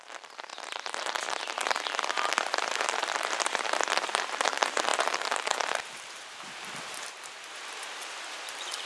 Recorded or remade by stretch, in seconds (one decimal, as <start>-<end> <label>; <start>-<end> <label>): 0.0-8.9 remade